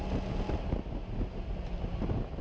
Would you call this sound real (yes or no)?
yes